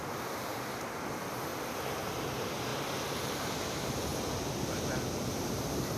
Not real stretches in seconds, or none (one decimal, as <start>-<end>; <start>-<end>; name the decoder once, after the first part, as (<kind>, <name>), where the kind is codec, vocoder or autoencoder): 0.0-0.5 (vocoder, BigVGAN v2); 1.1-1.5; 2.3-2.7; 3.2-4.1; 5.2-6.0